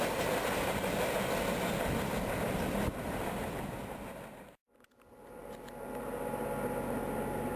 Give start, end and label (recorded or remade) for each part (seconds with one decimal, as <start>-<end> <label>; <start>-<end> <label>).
0.0-7.6 recorded